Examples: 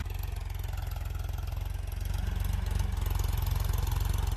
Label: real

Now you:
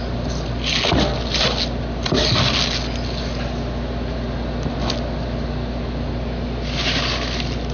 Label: real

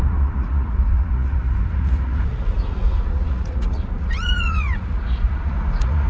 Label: fake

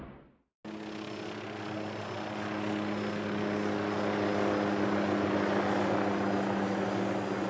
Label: real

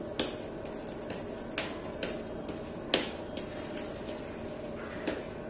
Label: real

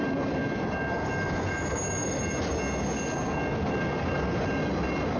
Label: real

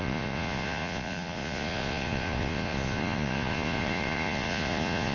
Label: fake